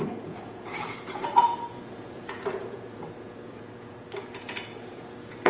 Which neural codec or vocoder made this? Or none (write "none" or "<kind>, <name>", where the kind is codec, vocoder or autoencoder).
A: vocoder, Vocos